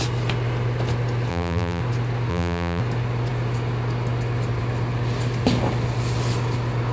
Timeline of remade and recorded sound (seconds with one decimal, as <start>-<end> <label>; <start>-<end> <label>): 0.0-1.3 recorded; 1.3-1.8 remade; 1.8-2.3 recorded; 2.3-2.8 remade; 2.8-6.9 recorded